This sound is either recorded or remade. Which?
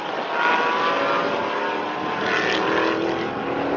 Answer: recorded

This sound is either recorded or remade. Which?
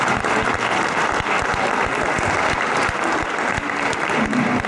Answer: recorded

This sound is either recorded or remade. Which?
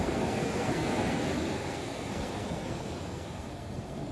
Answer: remade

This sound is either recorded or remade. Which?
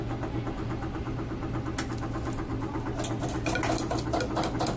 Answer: recorded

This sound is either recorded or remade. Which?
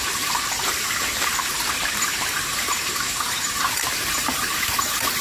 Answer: remade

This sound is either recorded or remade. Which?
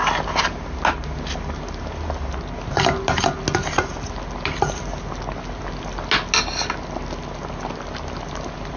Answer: recorded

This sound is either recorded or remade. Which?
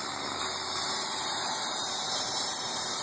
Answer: recorded